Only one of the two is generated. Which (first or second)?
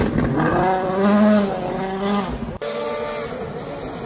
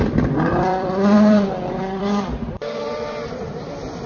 second